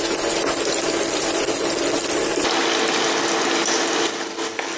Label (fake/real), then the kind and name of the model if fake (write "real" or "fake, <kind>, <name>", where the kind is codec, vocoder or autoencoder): real